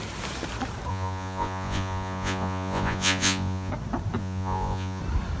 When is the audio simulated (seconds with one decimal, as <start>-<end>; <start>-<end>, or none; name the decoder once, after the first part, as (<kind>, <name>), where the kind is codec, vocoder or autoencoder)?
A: 0.9-3.7 (vocoder, Vocos); 4.2-5.0